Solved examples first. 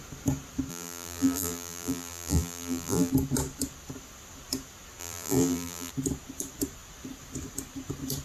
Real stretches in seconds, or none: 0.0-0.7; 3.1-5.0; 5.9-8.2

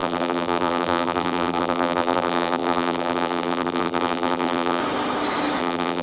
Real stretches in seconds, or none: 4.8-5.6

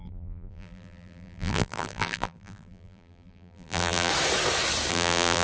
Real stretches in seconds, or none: 4.1-4.9

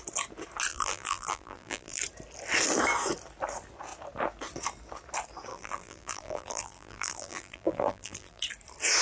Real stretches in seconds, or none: 0.0-0.7; 2.0-5.5; 8.4-9.0